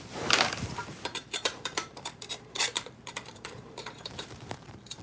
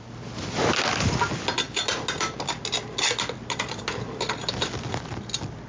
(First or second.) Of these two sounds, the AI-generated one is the first